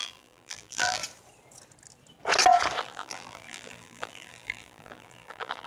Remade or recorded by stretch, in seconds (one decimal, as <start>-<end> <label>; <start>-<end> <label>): 0.0-1.0 remade; 1.0-2.8 recorded; 2.8-5.7 remade